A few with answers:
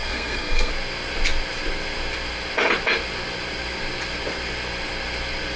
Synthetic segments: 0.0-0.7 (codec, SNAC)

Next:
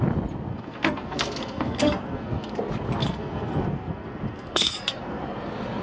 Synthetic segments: 0.5-2.6 (codec, SNAC); 3.0-5.2

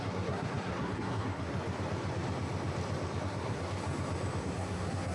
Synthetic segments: 0.0-1.5 (codec, SNAC); 3.2-3.8; 4.4-5.1

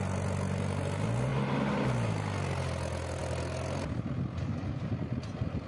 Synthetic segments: none

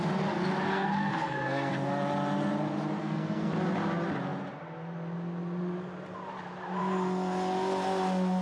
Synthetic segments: 0.7-1.7 (codec, SNAC); 3.0-3.5

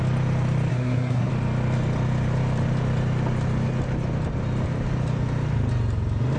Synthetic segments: 0.7-1.3 (codec, SNAC)

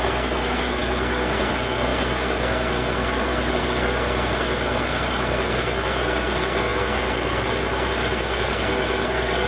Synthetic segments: 0.0-9.5 (codec, SNAC)

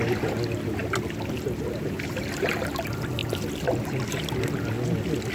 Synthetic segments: none